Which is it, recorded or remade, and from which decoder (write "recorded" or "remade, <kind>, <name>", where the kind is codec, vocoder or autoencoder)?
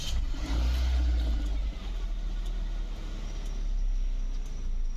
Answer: recorded